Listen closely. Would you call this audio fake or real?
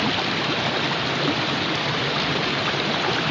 fake